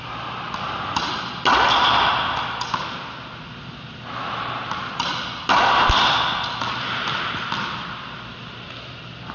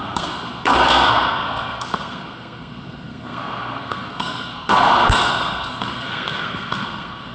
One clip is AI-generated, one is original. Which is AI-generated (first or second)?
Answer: second